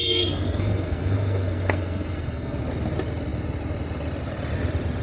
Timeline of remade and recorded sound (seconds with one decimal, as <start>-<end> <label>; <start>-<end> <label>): 0.0-2.6 remade; 2.6-5.0 recorded